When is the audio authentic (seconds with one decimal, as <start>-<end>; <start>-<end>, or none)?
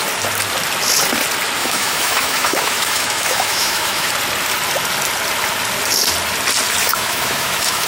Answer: 0.0-1.6; 4.1-6.8